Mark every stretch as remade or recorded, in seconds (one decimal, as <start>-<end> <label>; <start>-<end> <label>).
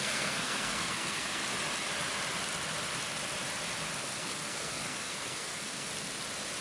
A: 0.0-1.4 remade; 1.4-4.0 recorded; 4.0-5.9 remade; 5.9-6.6 recorded